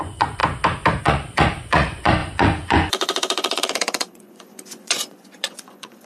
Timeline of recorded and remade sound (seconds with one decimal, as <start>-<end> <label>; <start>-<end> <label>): 0.0-0.4 remade; 0.4-1.0 recorded; 1.0-6.1 remade